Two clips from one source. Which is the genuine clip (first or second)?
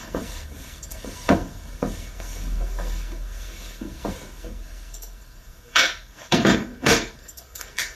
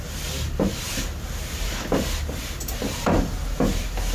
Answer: second